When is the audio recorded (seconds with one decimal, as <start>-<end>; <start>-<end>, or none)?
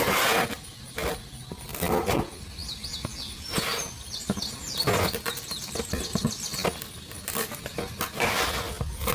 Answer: 0.0-9.1